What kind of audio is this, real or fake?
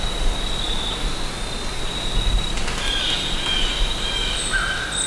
real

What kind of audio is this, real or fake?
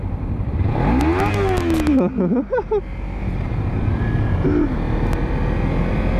real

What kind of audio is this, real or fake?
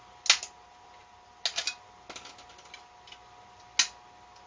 real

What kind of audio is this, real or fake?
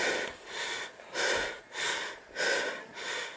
real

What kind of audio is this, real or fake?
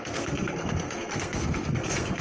fake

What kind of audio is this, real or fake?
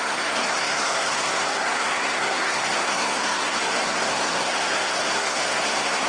fake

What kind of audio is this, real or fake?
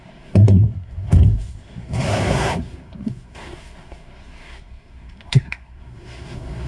fake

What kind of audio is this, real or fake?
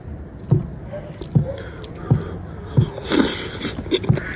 real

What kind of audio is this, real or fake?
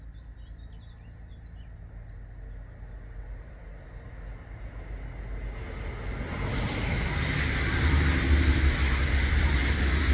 real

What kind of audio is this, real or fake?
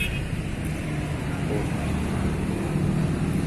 real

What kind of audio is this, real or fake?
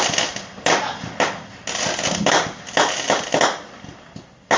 real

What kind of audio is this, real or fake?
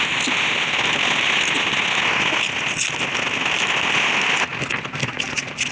real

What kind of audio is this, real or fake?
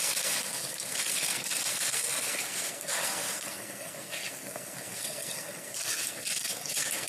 fake